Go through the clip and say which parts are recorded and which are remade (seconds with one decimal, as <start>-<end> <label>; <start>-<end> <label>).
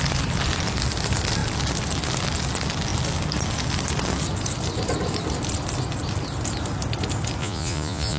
0.0-7.4 recorded; 7.4-8.2 remade